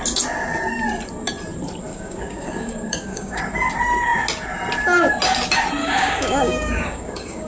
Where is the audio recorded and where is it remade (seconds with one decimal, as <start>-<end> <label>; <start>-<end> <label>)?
0.0-1.9 recorded; 1.9-3.4 remade; 3.4-5.8 recorded; 5.8-7.5 remade